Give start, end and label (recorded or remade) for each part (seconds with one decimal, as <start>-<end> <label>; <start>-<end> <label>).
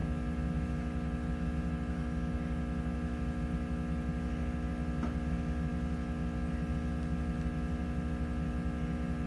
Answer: 0.0-9.3 recorded